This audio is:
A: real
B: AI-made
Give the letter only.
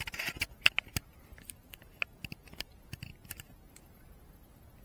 A